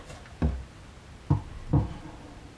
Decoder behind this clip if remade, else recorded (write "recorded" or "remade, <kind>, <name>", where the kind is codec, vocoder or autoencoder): recorded